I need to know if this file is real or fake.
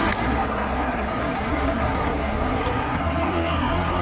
fake